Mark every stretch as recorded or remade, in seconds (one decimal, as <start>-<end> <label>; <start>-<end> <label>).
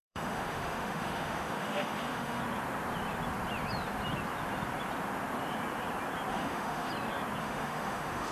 0.0-2.4 remade; 2.4-6.3 recorded; 6.3-6.9 remade; 6.9-7.4 recorded; 7.4-8.3 remade